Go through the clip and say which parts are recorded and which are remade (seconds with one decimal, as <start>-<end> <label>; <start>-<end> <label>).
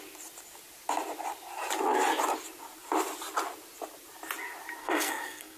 0.0-4.8 recorded; 4.8-5.6 remade